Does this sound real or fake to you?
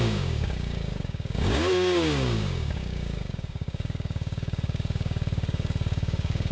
fake